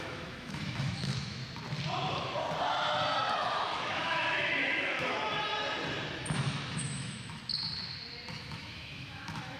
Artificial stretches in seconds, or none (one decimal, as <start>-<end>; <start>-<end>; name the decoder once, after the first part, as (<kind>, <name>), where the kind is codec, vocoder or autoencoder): 0.0-1.4 (autoencoder, DAC-VAE); 3.3-5.3; 6.1-7.4; 8.3-9.6